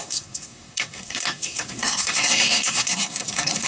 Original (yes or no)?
no